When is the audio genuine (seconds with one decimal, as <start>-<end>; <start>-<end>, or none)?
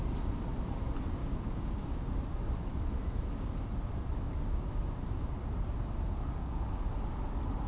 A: 0.0-1.2; 2.2-6.4; 6.9-7.7